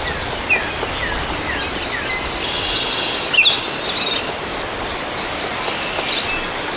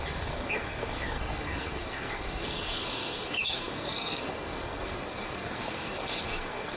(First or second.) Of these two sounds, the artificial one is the second